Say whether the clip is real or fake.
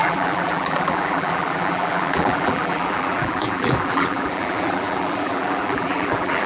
fake